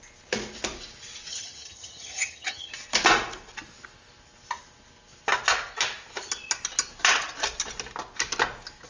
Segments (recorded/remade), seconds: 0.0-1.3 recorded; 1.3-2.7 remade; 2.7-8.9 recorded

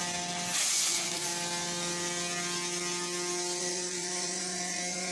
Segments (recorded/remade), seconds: 0.0-0.7 recorded; 0.7-1.3 remade; 1.3-3.6 recorded; 3.6-5.1 remade

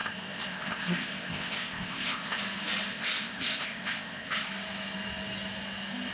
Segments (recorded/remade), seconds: 0.0-2.4 remade; 2.4-2.9 recorded; 2.9-4.5 remade; 4.5-6.1 recorded